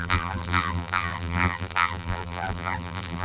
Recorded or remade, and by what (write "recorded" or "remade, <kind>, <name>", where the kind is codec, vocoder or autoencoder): remade, vocoder, BigVGAN v2